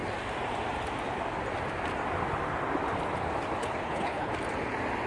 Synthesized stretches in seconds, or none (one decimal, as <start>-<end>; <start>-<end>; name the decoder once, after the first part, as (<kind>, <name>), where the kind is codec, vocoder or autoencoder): 3.6-4.3 (codec, HILCodec)